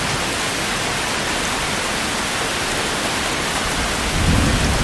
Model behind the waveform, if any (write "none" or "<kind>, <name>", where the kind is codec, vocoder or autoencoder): none